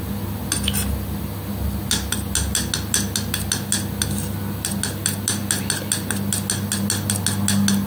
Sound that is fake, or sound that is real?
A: real